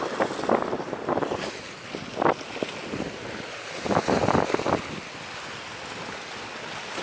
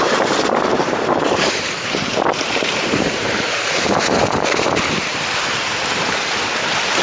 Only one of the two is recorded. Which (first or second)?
first